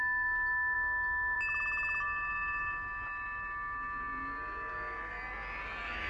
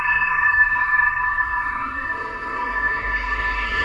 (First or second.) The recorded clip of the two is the first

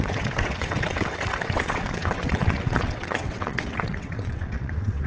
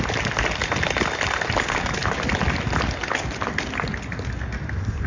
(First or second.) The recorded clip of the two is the second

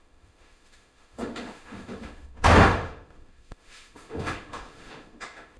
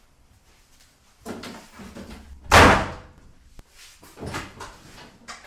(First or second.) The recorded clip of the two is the second